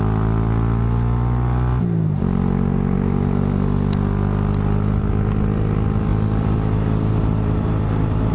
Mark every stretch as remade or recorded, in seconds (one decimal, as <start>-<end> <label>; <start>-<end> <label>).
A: 0.0-6.1 recorded; 6.1-8.3 remade

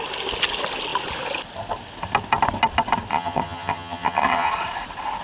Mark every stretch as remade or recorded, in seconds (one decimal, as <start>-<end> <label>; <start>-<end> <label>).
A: 0.0-3.1 recorded; 3.1-4.5 remade; 4.5-5.2 recorded

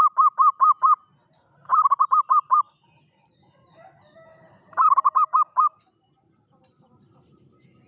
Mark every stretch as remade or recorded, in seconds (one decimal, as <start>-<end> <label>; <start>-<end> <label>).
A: 0.0-7.9 recorded

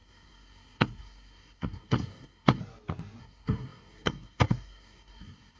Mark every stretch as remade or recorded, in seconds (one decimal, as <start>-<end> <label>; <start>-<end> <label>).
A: 0.0-2.6 remade; 2.6-3.2 recorded; 3.2-5.6 remade

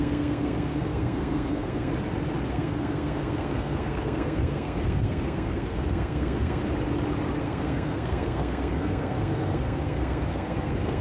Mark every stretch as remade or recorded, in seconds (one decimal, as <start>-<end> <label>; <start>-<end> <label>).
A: 0.0-1.9 remade; 1.9-2.5 recorded; 2.5-6.6 remade; 6.6-7.4 recorded; 7.4-11.0 remade

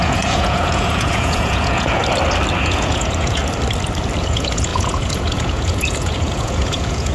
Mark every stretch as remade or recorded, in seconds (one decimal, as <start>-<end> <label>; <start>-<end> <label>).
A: 0.0-2.0 remade; 2.0-2.6 recorded; 2.6-3.4 remade; 3.4-4.2 recorded; 4.2-7.1 remade

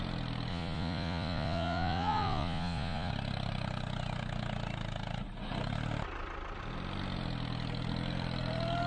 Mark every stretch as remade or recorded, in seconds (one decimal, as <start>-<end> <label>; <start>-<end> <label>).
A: 0.0-0.5 recorded; 0.5-3.1 remade; 3.1-8.9 recorded

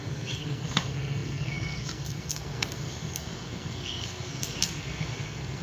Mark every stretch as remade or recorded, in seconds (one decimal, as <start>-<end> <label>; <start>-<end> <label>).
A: 0.0-5.6 remade